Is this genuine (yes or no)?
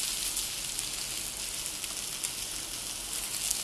yes